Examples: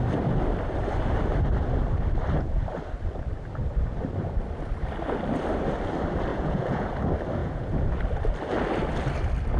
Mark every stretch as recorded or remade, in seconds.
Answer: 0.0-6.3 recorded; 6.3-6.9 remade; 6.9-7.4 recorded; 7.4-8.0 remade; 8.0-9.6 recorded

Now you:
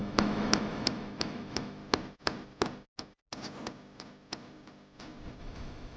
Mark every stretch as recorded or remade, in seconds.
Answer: 0.0-1.8 remade; 1.8-5.4 recorded; 5.4-6.0 remade

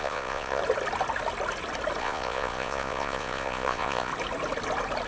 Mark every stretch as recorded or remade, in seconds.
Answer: 0.0-0.6 remade; 0.6-2.0 recorded; 2.0-4.1 remade; 4.1-5.1 recorded

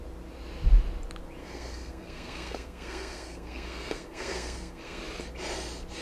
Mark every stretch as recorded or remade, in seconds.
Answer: 0.0-1.4 recorded; 1.4-5.0 remade; 5.0-6.0 recorded